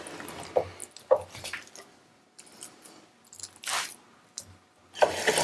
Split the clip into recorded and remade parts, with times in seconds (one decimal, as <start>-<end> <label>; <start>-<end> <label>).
0.0-5.4 recorded